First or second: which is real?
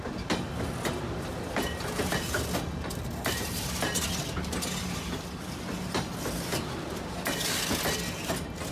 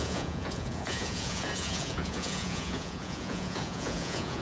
first